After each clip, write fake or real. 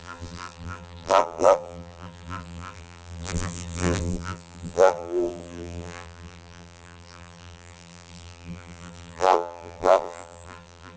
fake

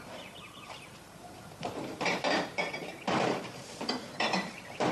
fake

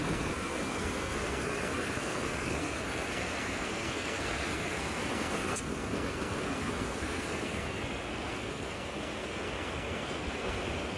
fake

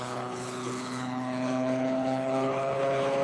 fake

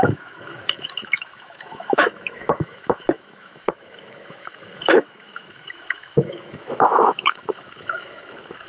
fake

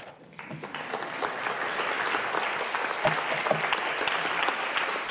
real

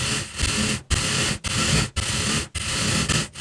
real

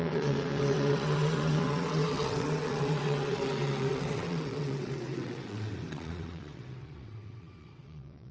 fake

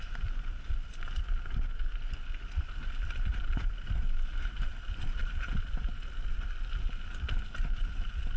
real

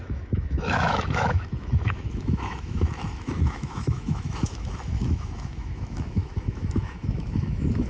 fake